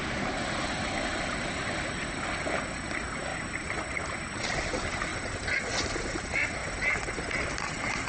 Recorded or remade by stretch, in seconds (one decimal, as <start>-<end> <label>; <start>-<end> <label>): 0.0-8.1 recorded